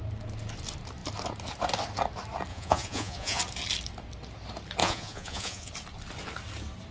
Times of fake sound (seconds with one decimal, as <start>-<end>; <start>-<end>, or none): 2.5-3.4; 4.8-5.7